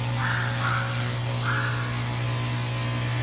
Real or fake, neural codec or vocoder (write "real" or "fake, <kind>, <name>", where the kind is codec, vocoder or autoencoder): real